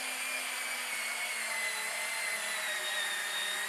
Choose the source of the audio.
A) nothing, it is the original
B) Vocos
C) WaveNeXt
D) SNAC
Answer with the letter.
A